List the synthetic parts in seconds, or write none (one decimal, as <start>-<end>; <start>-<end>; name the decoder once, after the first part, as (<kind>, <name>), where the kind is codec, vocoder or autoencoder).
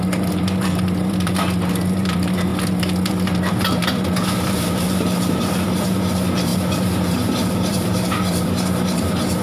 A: 0.0-9.4 (vocoder, BigVGAN v2)